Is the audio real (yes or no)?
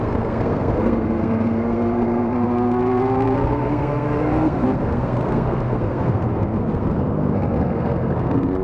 no